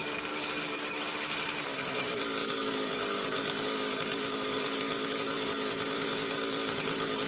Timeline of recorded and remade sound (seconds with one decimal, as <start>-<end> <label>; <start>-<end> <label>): 0.0-7.3 remade